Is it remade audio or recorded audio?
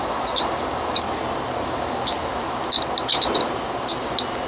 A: recorded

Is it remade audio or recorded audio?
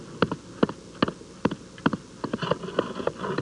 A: recorded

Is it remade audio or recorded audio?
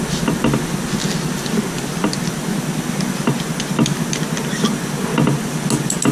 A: recorded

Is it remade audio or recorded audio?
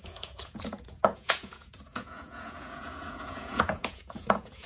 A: remade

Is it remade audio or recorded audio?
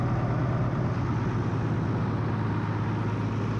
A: recorded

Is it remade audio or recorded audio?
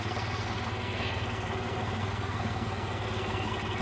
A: remade